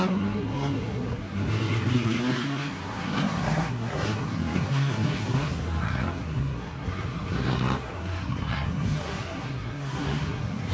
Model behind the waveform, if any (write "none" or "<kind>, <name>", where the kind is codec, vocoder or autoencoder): codec, SNAC